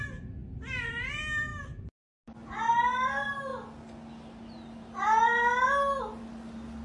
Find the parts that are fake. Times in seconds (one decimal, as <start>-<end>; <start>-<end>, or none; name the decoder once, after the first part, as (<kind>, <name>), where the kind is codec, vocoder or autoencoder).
1.5-2.2 (vocoder, BigVGAN v2)